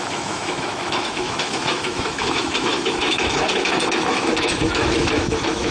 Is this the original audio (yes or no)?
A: no